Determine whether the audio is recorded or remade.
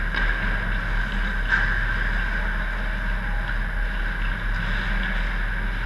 recorded